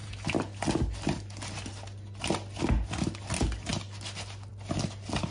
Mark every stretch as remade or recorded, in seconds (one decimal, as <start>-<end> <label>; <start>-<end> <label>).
0.0-5.3 recorded